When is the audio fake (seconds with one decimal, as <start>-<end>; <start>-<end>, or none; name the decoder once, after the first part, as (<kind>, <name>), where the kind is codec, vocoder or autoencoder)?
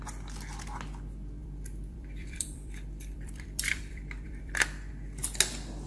1.4-4.9 (vocoder, BigVGAN v2)